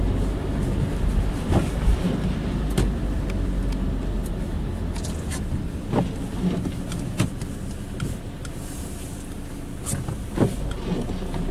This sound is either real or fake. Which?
real